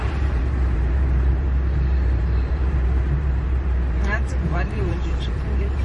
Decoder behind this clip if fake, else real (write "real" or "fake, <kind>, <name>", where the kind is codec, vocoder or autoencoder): fake, vocoder, BigVGAN v2